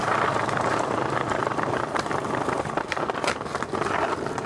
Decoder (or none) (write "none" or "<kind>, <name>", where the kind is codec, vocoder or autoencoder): none